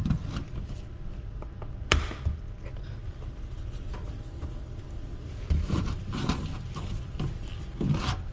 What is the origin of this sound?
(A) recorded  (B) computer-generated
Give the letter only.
A